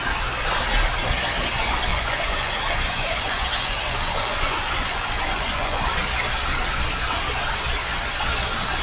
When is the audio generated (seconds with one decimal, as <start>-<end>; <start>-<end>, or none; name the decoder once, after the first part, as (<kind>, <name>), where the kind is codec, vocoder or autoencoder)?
1.9-5.9 (vocoder, Vocos)